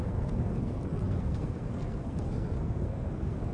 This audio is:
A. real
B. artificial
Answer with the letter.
B